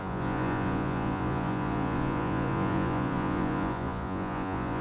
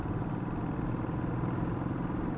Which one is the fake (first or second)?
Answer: first